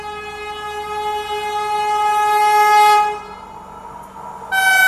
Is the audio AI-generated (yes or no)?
no